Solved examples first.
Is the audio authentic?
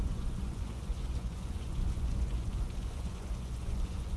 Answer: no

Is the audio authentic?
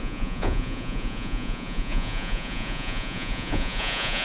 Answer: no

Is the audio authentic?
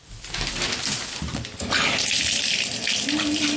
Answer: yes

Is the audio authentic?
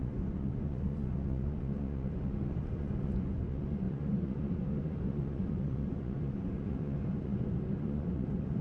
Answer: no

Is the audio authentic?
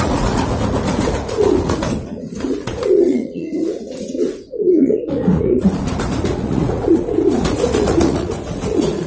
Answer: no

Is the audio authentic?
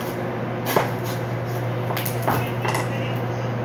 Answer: yes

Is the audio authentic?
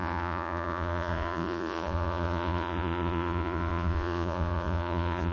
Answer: no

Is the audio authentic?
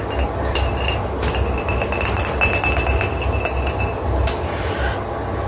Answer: yes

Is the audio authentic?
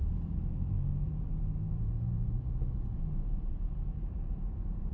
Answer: no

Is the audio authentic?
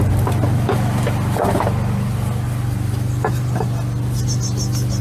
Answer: yes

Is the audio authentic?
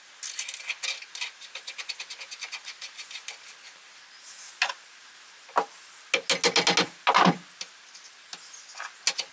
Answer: yes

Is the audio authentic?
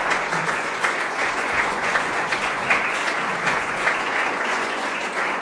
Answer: no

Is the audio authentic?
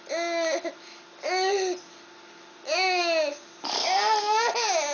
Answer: yes